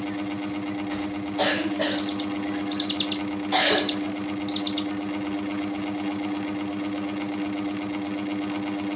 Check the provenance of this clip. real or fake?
real